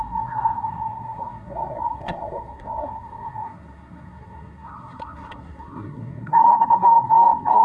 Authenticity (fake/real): fake